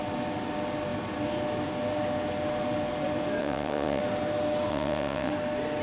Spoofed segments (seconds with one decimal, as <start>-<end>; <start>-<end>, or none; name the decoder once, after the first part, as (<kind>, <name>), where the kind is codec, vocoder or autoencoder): 3.4-4.0 (vocoder, WaveNeXt); 4.7-5.3